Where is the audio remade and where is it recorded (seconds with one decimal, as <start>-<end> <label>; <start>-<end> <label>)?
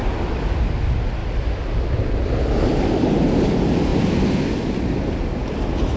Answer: 0.0-0.6 remade; 0.6-1.2 recorded; 1.2-2.4 remade; 2.4-6.0 recorded